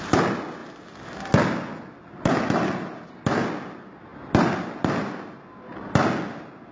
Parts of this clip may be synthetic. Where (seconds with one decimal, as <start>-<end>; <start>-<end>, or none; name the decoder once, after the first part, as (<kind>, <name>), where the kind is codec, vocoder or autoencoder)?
none